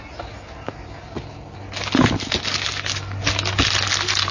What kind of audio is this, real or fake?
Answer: real